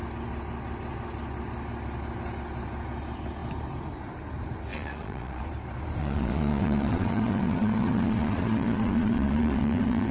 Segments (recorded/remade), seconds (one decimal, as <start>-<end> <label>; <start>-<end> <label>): 0.0-4.7 recorded; 4.7-5.4 remade; 5.4-6.0 recorded; 6.0-10.1 remade